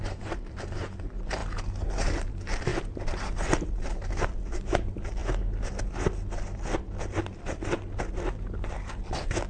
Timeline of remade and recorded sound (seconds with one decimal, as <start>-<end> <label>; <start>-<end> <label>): 0.0-1.4 remade; 1.4-2.1 recorded; 2.1-5.2 remade; 5.2-9.5 recorded